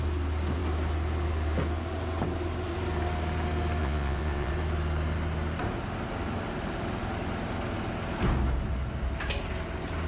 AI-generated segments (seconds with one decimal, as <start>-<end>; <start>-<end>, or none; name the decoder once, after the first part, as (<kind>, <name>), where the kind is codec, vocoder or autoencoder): 3.8-4.5 (vocoder, Vocos)